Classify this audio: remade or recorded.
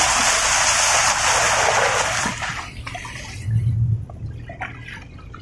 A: recorded